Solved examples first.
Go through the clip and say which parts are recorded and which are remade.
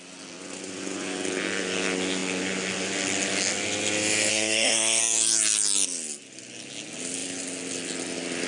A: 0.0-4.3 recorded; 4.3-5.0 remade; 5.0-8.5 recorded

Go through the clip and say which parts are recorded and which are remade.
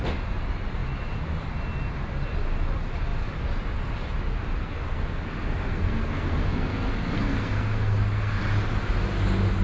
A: 0.0-4.6 recorded; 4.6-8.4 remade; 8.4-9.6 recorded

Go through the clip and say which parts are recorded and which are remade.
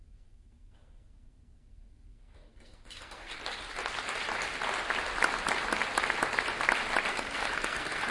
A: 0.0-3.4 remade; 3.4-7.1 recorded; 7.1-8.1 remade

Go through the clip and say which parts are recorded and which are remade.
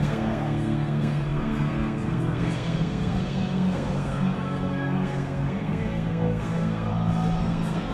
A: 0.0-6.9 remade; 6.9-7.4 recorded; 7.4-7.9 remade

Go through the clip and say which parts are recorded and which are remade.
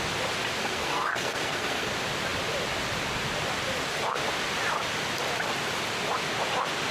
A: 0.0-0.6 recorded; 0.6-1.9 remade; 1.9-6.9 recorded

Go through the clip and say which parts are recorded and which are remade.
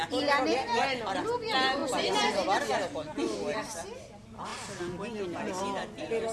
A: 0.0-6.3 recorded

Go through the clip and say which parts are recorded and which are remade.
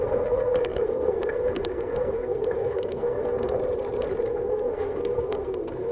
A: 0.0-3.6 remade; 3.6-4.3 recorded; 4.3-5.9 remade